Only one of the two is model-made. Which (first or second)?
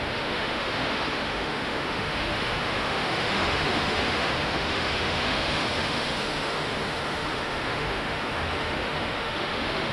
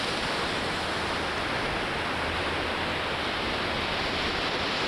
first